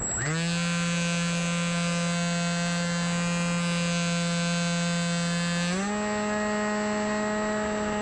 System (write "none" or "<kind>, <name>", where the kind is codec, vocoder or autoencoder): none